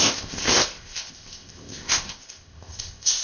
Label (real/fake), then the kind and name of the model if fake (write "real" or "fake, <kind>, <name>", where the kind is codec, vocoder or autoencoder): fake, codec, ZipCodec